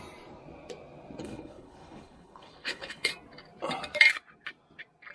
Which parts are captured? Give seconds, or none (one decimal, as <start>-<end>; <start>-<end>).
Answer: 0.0-1.2; 3.1-5.1